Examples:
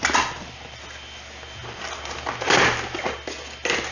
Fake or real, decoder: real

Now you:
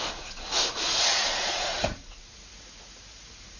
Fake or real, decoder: fake, vocoder, Vocos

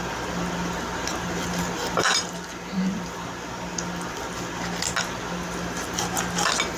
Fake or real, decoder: real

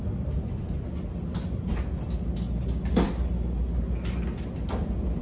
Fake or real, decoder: real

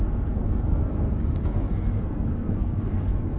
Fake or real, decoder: fake, codec, SNAC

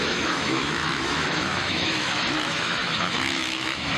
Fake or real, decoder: fake, autoencoder, DAC-VAE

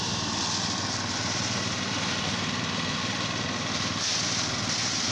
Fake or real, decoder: real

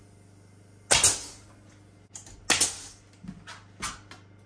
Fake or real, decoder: real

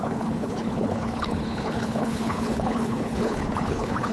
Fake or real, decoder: fake, codec, HILCodec